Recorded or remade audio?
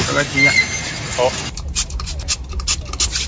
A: recorded